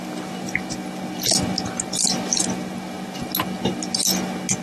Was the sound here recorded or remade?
recorded